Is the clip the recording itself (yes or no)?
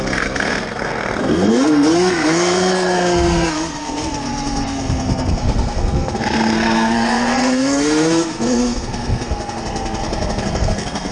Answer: no